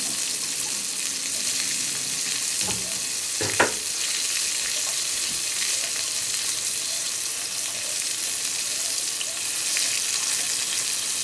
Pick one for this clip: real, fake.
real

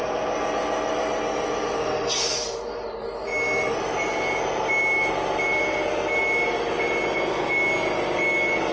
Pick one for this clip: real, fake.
real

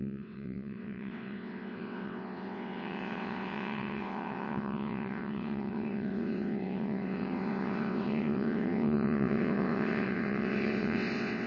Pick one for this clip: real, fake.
fake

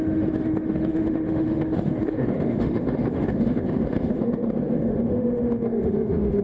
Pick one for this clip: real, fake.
fake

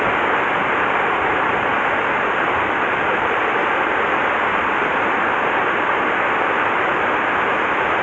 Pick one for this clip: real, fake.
real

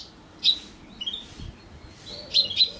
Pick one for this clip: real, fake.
real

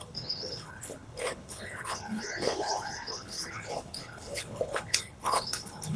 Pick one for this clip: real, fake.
fake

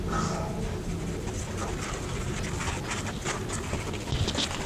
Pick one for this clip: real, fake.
real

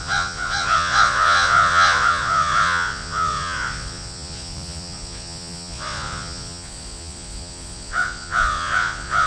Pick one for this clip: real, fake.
fake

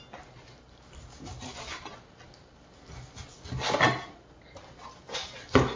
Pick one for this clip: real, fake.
real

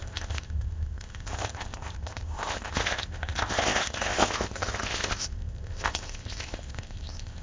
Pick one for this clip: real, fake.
fake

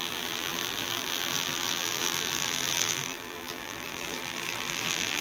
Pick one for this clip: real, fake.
fake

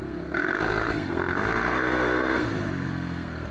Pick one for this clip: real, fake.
fake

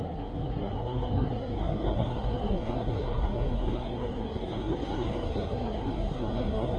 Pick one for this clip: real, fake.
fake